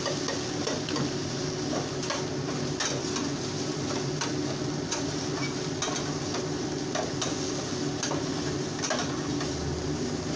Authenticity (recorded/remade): recorded